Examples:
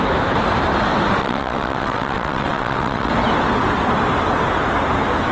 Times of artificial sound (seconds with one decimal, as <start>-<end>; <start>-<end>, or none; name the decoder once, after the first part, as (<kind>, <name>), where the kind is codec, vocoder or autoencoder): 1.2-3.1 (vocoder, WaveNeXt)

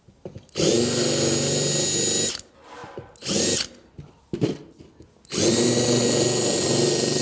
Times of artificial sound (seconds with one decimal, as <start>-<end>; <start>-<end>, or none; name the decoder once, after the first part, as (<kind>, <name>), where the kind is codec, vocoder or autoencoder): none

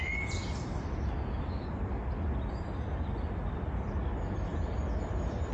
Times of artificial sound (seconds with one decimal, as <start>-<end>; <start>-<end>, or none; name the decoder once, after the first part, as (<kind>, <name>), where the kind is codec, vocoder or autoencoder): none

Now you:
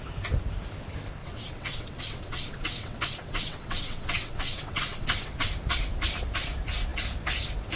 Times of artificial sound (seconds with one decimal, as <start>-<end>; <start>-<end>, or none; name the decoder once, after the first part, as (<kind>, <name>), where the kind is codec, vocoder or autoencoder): 1.2-5.5 (vocoder, WaveNeXt)

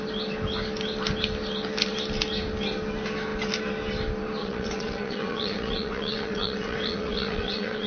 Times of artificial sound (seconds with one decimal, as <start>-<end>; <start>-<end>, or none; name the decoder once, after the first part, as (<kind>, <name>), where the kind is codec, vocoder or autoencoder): 4.4-7.9 (vocoder, WaveNeXt)